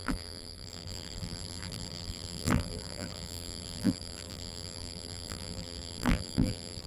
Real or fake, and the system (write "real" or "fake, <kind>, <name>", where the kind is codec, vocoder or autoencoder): fake, vocoder, BigVGAN v2